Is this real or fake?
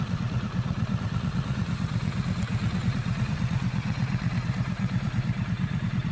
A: fake